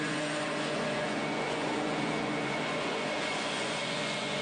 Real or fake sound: fake